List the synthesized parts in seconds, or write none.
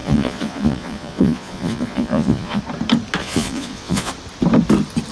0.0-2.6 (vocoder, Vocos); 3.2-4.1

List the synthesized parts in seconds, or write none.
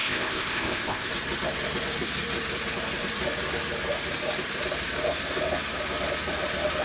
0.0-1.1 (codec, ZipCodec)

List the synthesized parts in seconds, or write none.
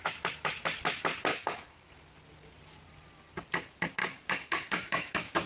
1.3-1.9 (codec, DAC); 4.0-5.5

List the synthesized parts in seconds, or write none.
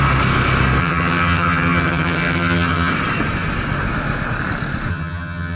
0.8-2.9 (vocoder, HiFi-GAN); 4.9-5.6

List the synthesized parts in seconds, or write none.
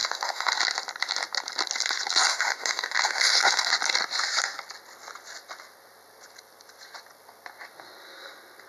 0.0-0.5 (autoencoder, DAC-VAE); 2.3-3.7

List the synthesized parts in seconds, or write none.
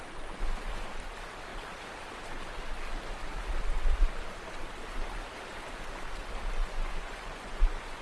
6.6-8.0 (vocoder, Vocos)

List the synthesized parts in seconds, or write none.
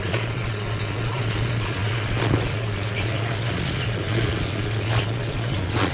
0.0-5.9 (vocoder, Vocos)